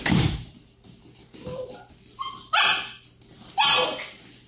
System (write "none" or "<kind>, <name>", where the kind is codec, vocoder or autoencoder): none